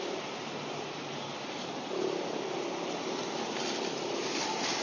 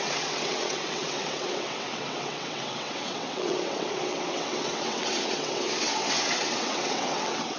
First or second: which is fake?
second